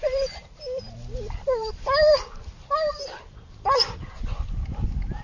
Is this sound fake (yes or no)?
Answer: no